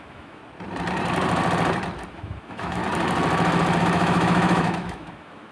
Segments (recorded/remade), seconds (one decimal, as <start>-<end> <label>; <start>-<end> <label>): 0.0-0.4 remade; 0.4-2.1 recorded; 2.1-2.8 remade; 2.8-3.8 recorded; 3.8-5.5 remade